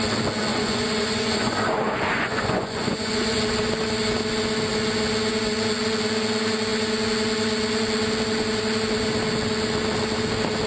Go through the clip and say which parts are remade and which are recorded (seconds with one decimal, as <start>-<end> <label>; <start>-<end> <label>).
0.0-0.5 recorded; 0.5-3.4 remade; 3.4-10.7 recorded